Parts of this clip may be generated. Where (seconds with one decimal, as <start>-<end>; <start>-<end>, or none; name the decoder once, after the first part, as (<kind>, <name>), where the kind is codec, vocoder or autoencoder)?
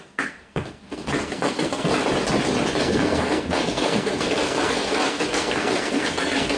0.0-1.9 (codec, SNAC); 2.8-6.6